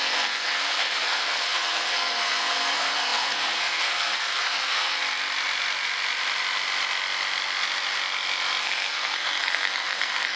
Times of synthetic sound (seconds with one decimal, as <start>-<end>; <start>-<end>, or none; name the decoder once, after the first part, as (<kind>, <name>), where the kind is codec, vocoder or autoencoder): 0.0-5.0 (codec, SNAC); 8.6-10.4